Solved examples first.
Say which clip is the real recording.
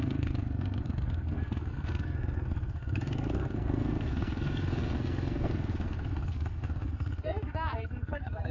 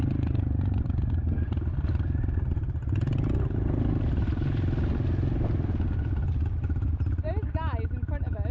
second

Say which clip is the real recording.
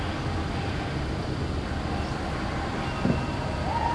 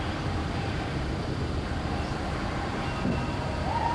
first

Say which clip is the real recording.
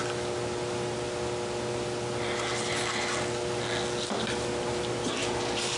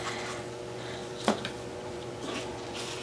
first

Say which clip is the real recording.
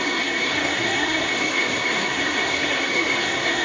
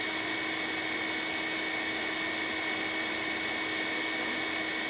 second